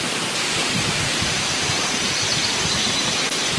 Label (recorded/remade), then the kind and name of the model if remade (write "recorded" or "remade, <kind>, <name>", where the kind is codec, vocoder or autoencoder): remade, vocoder, BigVGAN v2